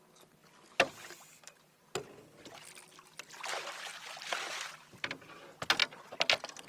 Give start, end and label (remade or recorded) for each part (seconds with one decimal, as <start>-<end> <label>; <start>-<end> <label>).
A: 0.0-6.7 recorded